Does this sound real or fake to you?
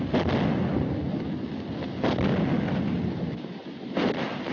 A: real